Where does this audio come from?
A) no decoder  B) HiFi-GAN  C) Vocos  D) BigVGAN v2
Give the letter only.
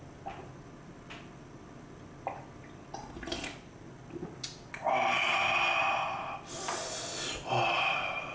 A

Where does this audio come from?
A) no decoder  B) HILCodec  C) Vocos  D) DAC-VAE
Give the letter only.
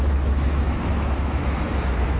D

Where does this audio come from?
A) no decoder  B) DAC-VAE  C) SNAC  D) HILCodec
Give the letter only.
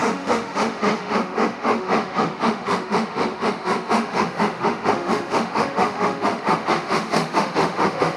B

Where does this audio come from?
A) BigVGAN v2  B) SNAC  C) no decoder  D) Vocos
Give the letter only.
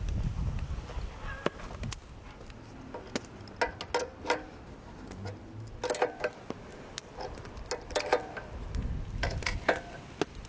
C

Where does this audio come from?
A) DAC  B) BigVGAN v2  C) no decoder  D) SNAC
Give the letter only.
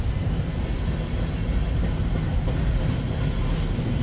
C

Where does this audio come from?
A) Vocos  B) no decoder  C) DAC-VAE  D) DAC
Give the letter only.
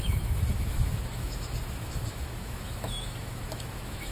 C